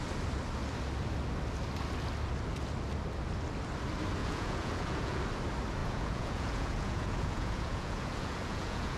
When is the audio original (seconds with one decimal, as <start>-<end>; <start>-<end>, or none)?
0.0-4.2; 5.2-5.8